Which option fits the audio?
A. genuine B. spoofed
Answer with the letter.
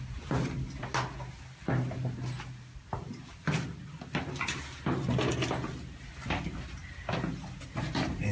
A